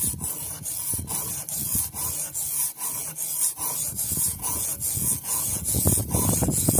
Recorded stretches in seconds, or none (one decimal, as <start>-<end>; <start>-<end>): 0.0-4.3; 6.0-6.8